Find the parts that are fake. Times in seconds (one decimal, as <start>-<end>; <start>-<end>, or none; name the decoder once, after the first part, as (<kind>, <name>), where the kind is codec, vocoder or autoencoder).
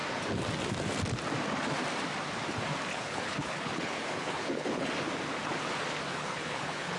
2.9-4.9 (codec, HILCodec); 6.1-7.0